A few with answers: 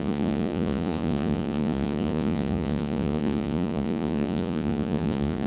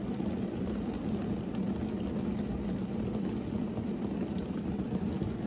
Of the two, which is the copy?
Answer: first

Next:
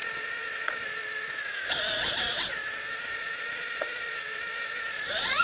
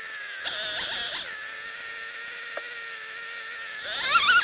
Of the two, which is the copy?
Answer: first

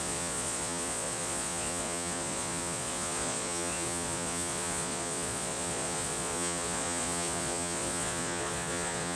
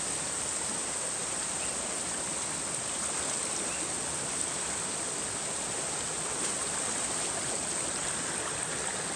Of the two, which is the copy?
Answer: first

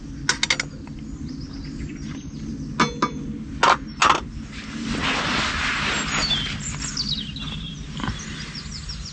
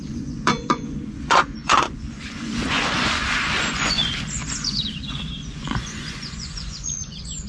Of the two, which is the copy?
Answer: second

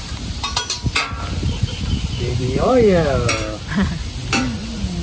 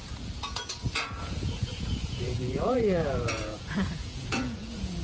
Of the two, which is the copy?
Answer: second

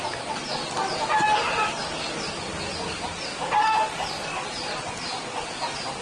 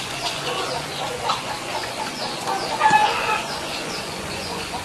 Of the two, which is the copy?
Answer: second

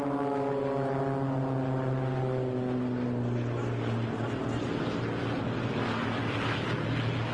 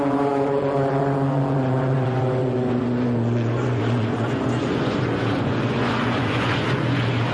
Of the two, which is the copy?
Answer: second